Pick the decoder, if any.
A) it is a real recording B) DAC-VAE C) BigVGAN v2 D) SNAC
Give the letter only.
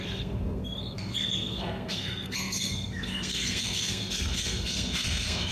D